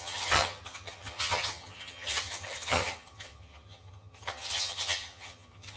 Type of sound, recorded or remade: remade